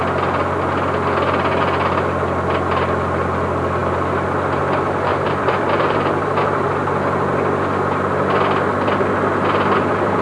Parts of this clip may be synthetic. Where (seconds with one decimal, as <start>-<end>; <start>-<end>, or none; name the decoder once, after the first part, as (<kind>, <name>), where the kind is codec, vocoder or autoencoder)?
5.1-6.7 (vocoder, BigVGAN v2)